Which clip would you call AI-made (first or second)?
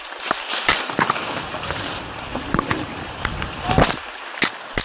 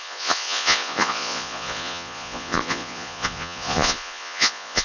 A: second